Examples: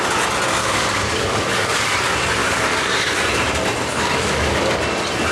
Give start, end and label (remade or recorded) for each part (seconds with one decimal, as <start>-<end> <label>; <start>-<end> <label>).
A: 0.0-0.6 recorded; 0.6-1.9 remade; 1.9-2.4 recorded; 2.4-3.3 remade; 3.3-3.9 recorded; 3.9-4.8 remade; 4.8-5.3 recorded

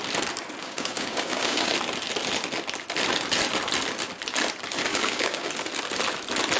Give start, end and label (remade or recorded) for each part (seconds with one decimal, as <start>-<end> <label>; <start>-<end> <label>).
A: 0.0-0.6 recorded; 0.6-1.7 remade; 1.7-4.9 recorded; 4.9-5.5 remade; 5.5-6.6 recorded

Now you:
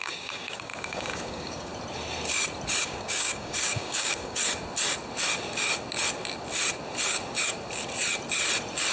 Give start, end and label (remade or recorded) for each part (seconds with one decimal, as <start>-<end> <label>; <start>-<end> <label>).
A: 0.0-1.7 remade; 1.7-2.8 recorded; 2.8-4.4 remade; 4.4-8.9 recorded

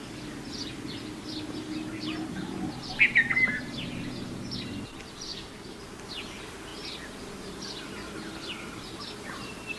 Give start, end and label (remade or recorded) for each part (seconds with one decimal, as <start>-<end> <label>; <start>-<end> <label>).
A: 0.0-5.3 recorded; 5.3-5.8 remade; 5.8-9.8 recorded

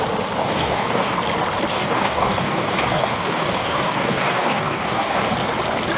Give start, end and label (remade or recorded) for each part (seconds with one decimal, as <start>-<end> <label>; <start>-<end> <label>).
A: 0.0-0.4 recorded; 0.4-1.2 remade; 1.2-1.7 recorded; 1.7-5.3 remade; 5.3-6.0 recorded